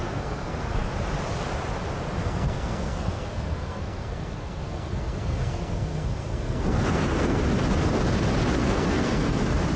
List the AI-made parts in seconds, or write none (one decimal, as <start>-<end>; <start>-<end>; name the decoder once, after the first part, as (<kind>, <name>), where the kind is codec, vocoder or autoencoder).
0.0-0.9 (codec, SNAC); 2.2-7.4; 8.6-9.4